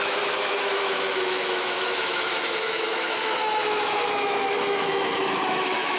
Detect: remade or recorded remade